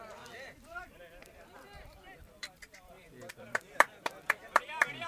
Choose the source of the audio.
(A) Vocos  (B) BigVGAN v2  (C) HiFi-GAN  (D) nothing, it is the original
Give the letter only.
B